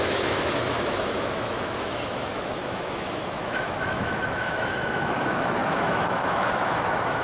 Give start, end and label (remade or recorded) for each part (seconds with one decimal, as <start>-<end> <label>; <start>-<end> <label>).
0.0-7.2 remade

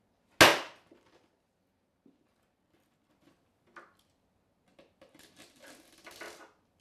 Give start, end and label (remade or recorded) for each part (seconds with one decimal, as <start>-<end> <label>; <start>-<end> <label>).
0.0-6.8 recorded

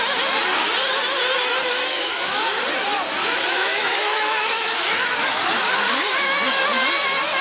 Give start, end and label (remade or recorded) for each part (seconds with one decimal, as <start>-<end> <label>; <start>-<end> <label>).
0.0-1.9 recorded; 1.9-2.6 remade; 2.6-3.2 recorded; 3.2-6.1 remade; 6.1-7.4 recorded

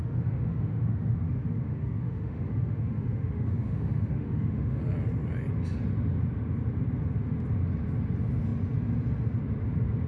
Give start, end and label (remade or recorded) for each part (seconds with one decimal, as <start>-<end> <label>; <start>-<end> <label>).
0.0-4.8 remade; 4.8-10.1 recorded

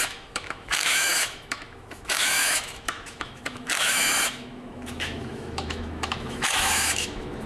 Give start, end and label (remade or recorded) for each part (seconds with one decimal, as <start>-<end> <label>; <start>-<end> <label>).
0.0-7.5 remade